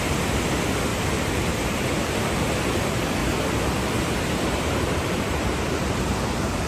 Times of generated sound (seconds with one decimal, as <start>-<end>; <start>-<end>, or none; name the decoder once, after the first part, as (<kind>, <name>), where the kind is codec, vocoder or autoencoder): 0.9-1.9 (vocoder, BigVGAN v2); 3.2-6.7